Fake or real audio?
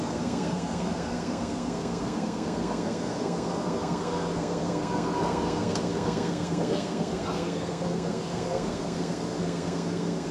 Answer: fake